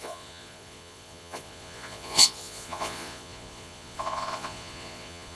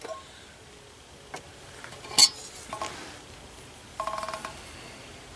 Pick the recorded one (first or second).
second